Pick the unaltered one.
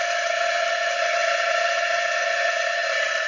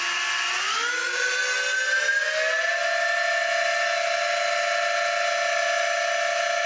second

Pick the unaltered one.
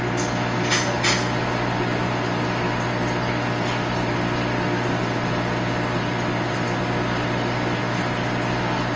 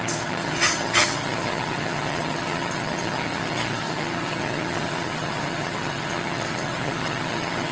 first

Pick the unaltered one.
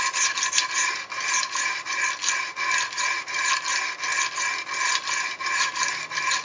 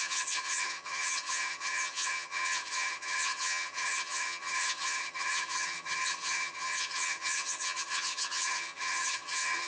first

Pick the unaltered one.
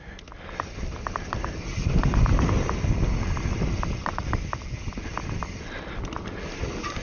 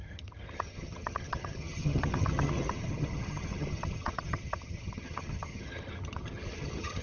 first